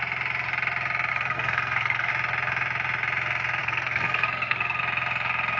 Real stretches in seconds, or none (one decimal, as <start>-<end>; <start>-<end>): 0.0-1.1; 2.1-3.6; 4.8-5.6